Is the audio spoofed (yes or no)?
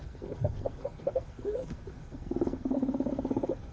yes